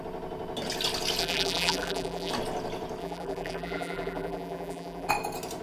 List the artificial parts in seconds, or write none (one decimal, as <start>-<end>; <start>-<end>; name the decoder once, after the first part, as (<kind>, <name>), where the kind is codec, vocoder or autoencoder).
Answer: 1.2-2.3 (vocoder, BigVGAN v2); 3.0-5.1